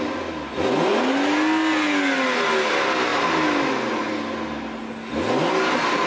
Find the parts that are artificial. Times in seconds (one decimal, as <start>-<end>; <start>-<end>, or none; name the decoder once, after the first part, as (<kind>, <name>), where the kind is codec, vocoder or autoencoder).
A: none